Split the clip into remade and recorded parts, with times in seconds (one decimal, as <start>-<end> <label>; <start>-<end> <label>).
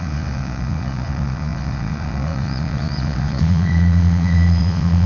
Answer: 0.0-5.1 remade